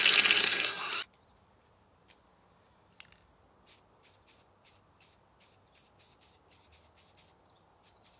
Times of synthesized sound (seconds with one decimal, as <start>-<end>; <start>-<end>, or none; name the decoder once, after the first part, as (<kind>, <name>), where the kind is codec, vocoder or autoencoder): 0.4-0.9 (codec, SNAC)